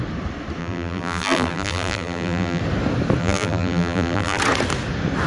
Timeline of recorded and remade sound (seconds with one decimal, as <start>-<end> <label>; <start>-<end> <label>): 0.0-0.6 recorded; 0.6-2.6 remade; 2.6-3.2 recorded; 3.2-4.4 remade; 4.4-5.3 recorded